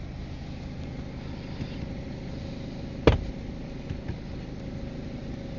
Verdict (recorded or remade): recorded